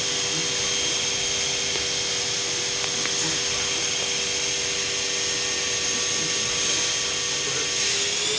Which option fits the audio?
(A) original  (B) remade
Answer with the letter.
A